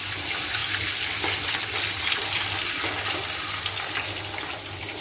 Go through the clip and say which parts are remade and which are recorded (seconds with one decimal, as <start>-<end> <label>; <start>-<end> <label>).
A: 0.0-5.0 recorded